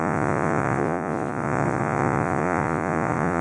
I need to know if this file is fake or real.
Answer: fake